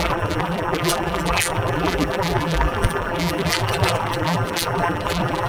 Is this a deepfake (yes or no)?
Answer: yes